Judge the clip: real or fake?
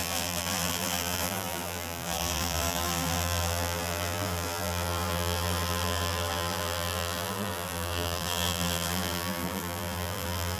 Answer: fake